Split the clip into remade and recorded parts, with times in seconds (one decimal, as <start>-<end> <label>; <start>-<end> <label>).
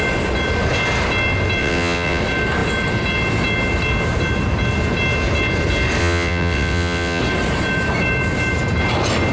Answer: 0.0-1.6 recorded; 1.6-2.2 remade; 2.2-6.0 recorded; 6.0-7.2 remade; 7.2-9.3 recorded